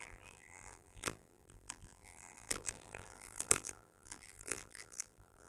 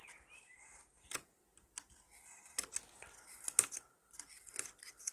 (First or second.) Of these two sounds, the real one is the second